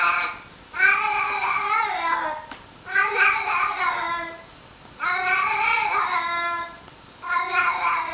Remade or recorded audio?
recorded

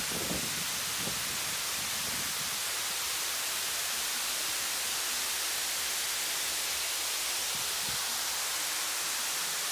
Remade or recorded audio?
recorded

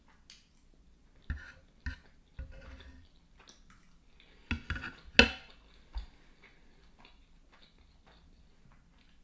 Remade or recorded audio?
recorded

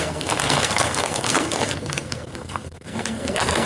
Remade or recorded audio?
remade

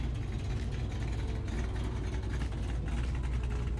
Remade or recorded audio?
recorded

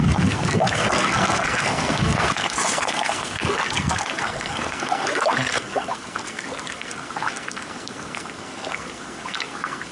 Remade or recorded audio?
remade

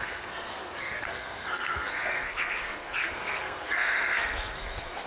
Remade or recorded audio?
remade